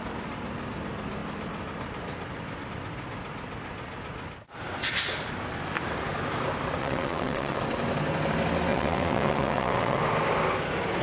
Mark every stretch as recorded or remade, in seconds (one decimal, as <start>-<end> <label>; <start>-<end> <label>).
0.0-6.8 recorded; 6.8-7.6 remade; 7.6-8.7 recorded; 8.7-10.0 remade; 10.0-11.0 recorded